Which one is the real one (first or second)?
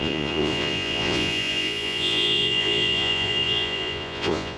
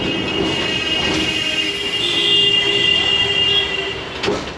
second